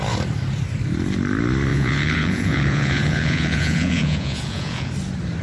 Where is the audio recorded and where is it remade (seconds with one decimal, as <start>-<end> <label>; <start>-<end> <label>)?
0.0-1.7 recorded; 1.7-4.9 remade; 4.9-5.4 recorded